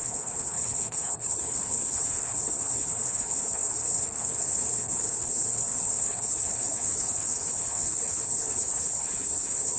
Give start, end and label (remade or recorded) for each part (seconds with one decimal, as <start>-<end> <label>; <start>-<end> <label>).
0.0-9.8 remade